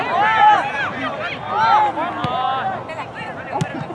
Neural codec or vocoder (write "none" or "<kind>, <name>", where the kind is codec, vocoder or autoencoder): none